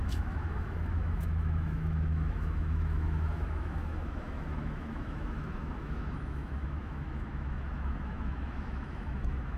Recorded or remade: remade